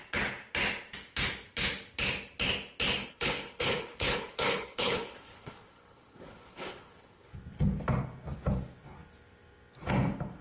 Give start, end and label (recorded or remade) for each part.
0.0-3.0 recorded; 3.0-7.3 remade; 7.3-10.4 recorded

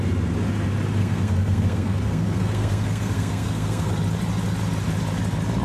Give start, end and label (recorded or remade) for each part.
0.0-1.0 recorded; 1.0-3.9 remade; 3.9-5.6 recorded

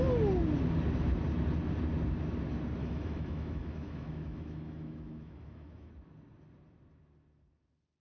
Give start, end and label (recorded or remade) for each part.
0.0-2.8 recorded; 2.8-5.9 remade; 5.9-8.0 recorded

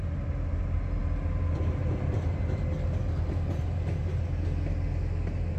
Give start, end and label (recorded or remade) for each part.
0.0-5.6 recorded